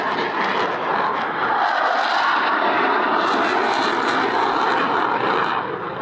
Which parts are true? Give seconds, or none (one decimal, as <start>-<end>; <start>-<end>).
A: 0.0-2.1; 2.7-3.7; 5.0-6.0